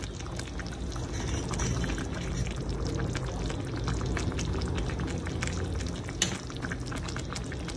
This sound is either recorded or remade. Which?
recorded